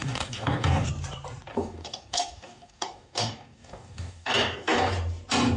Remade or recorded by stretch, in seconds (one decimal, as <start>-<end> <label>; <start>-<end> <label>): 0.0-0.9 remade; 0.9-1.5 recorded; 1.5-4.9 remade; 4.9-5.6 recorded